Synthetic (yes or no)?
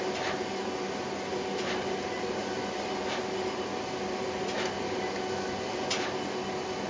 no